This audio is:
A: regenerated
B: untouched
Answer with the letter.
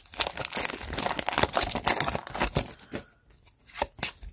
B